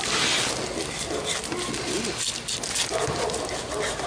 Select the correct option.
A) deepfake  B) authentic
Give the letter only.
B